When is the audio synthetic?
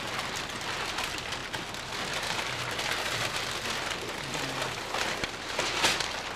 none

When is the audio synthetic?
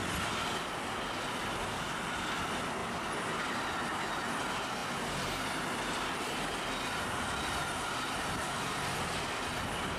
none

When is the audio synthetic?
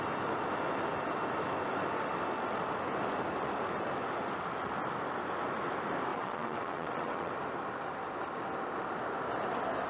6.1-7.3 (vocoder, WaveNeXt)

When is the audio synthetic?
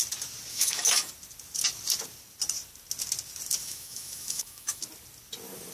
0.5-1.1 (autoencoder, DAC-VAE); 3.6-4.8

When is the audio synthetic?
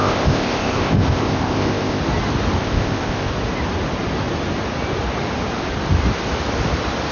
0.0-2.0 (codec, ZipCodec); 2.6-3.3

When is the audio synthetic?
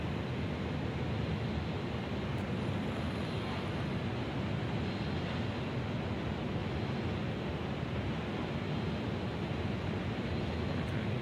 none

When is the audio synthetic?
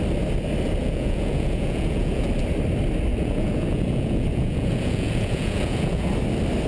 0.8-2.3 (vocoder, Vocos); 3.1-6.1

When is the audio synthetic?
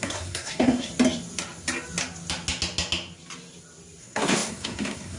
0.0-0.9 (codec, SNAC); 4.0-5.2